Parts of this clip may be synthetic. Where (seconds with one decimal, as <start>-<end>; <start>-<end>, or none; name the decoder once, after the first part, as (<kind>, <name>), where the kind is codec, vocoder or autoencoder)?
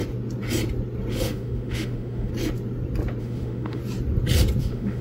1.1-2.3 (autoencoder, DAC-VAE); 3.2-3.8; 4.6-5.0